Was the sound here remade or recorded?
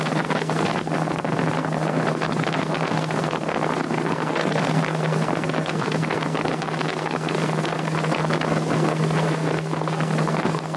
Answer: remade